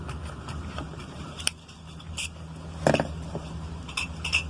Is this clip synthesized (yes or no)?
yes